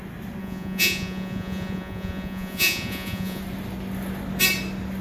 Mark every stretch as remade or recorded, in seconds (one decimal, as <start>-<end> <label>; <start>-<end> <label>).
0.0-0.4 recorded; 0.4-3.4 remade; 3.4-5.0 recorded